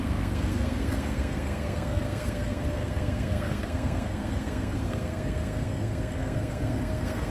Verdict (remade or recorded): remade